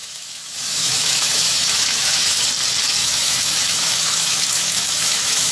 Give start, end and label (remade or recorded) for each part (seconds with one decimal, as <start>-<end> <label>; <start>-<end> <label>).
0.0-2.4 remade; 2.4-3.0 recorded; 3.0-5.5 remade